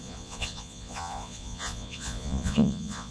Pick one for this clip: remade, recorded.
remade